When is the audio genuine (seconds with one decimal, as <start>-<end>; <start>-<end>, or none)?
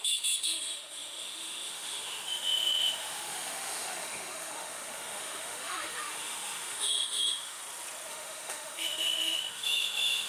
7.6-8.1